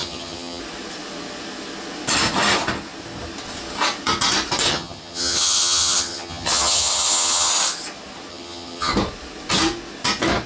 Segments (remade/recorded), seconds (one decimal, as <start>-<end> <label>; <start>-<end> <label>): 0.0-0.6 remade; 0.6-4.7 recorded; 4.7-7.5 remade; 7.5-8.3 recorded; 8.3-8.9 remade; 8.9-10.5 recorded